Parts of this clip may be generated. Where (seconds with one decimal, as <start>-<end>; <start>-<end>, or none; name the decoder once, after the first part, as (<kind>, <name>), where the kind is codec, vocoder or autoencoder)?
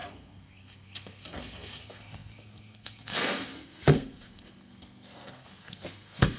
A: 0.0-6.4 (codec, SNAC)